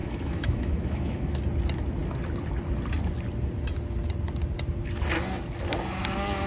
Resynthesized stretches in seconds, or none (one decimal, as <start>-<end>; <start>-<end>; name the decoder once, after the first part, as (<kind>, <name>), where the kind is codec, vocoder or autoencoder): 0.0-1.4 (autoencoder, DAC-VAE)